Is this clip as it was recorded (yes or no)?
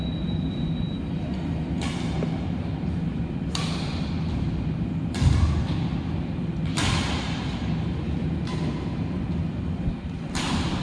yes